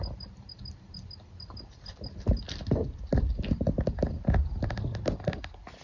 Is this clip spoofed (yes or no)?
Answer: no